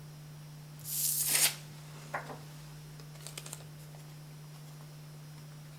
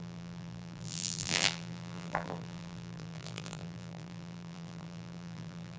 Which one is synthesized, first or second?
second